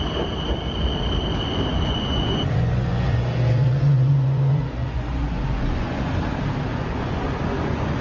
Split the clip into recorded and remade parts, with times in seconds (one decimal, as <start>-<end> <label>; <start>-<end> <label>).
0.0-1.7 recorded; 1.7-6.1 remade; 6.1-6.7 recorded; 6.7-8.0 remade